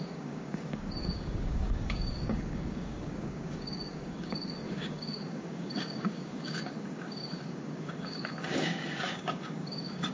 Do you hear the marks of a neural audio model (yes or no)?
yes